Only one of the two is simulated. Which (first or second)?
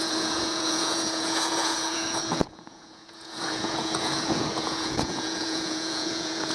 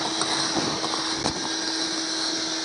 first